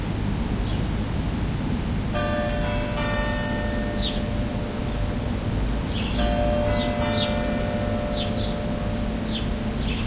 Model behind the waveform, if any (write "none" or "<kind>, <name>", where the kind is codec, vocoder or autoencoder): none